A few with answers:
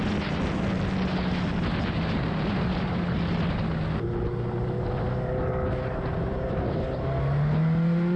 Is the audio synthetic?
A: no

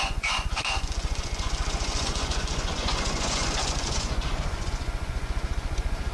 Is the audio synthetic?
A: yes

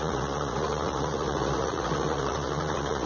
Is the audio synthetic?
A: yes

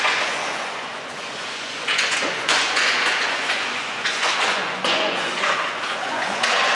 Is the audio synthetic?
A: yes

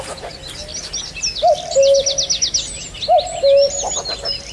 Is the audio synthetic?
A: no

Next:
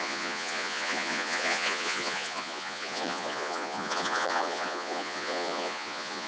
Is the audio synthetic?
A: yes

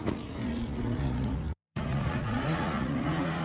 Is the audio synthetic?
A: yes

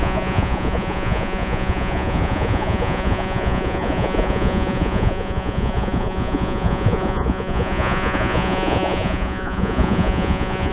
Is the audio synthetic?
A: yes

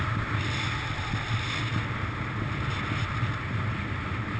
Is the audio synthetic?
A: no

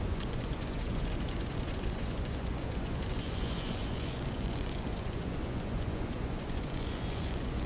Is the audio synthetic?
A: yes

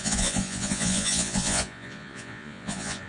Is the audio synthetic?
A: yes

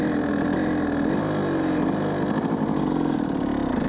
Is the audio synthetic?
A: no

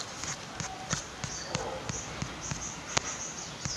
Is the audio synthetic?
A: no